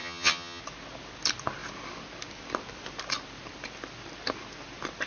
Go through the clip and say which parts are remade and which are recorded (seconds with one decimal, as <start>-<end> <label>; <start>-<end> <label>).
0.0-0.6 remade; 0.6-5.1 recorded